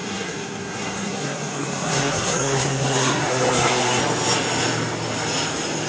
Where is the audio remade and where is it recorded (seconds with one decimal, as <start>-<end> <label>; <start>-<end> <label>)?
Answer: 0.0-4.0 remade; 4.0-5.9 recorded

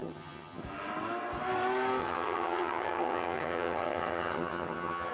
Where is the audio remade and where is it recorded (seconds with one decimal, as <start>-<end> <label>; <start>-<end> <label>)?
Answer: 0.0-0.6 remade; 0.6-2.0 recorded; 2.0-5.1 remade

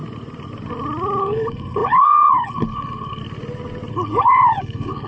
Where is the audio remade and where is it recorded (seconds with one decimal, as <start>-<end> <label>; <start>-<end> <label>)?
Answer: 0.0-1.2 recorded; 1.2-3.2 remade; 3.2-3.9 recorded; 3.9-5.1 remade

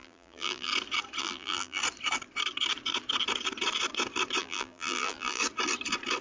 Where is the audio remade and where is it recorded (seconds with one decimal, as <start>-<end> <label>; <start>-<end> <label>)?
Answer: 0.0-0.7 remade; 0.7-1.2 recorded; 1.2-1.8 remade; 1.8-4.4 recorded; 4.4-5.4 remade; 5.4-6.2 recorded

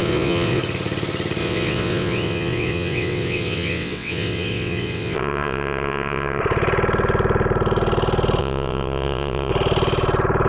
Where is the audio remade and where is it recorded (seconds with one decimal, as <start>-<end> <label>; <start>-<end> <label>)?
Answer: 0.0-0.6 remade; 0.6-1.4 recorded; 1.4-6.4 remade; 6.4-8.4 recorded; 8.4-9.5 remade; 9.5-10.5 recorded

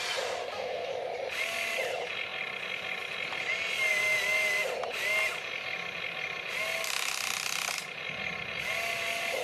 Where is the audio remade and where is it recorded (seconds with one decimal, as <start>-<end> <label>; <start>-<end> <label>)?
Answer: 0.0-0.4 recorded; 0.4-0.9 remade; 0.9-9.4 recorded

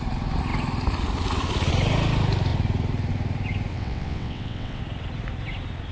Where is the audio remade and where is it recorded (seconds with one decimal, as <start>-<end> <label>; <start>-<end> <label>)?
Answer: 0.0-3.7 recorded; 3.7-4.8 remade; 4.8-5.9 recorded

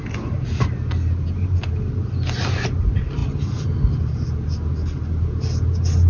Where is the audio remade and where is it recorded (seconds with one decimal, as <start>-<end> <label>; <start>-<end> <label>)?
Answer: 0.0-6.1 recorded